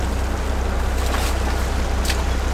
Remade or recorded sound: recorded